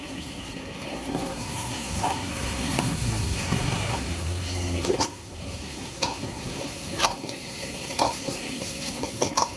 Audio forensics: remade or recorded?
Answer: remade